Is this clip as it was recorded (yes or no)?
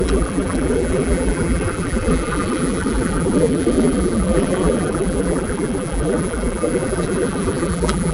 no